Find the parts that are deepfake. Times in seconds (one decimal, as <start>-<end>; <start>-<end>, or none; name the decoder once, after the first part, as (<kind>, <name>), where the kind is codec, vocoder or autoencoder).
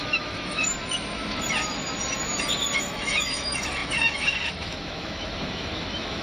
0.0-0.6 (autoencoder, DAC-VAE); 2.8-6.2